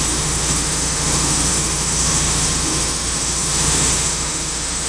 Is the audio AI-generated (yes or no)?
yes